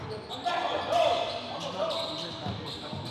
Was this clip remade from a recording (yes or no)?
no